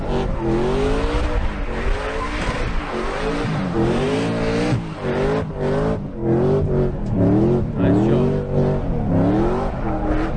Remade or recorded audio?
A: recorded